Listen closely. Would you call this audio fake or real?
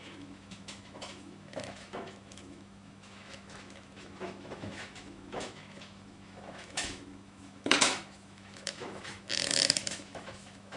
fake